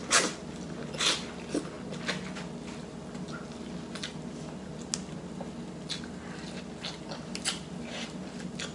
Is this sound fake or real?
real